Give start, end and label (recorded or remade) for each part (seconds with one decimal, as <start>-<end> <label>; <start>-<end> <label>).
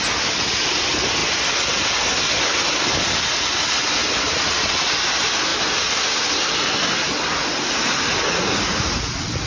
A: 0.0-9.5 recorded